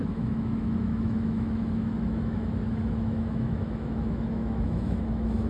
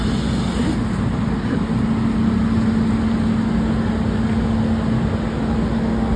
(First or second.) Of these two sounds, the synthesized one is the first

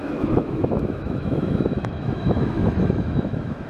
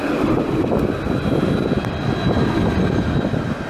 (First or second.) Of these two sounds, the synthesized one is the first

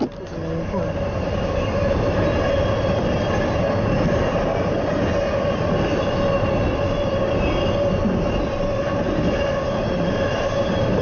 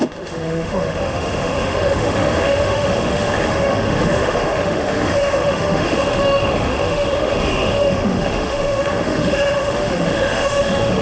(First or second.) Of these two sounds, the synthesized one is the second